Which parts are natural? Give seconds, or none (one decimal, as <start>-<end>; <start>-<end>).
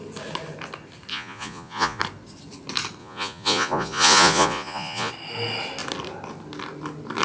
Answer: 0.0-1.1; 2.0-3.0; 5.1-7.2